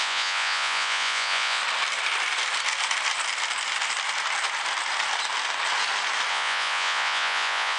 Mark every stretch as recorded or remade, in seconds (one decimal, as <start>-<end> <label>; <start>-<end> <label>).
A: 0.0-1.6 remade; 1.6-6.3 recorded; 6.3-7.8 remade